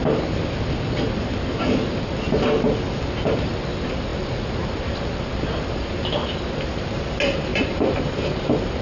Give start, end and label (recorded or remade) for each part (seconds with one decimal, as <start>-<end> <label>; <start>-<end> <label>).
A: 0.0-7.5 recorded; 7.5-8.8 remade